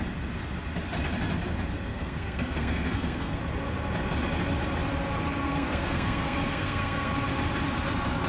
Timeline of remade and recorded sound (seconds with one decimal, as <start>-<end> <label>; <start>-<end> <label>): 0.0-1.9 recorded; 1.9-3.4 remade; 3.4-5.4 recorded; 5.4-7.1 remade; 7.1-8.3 recorded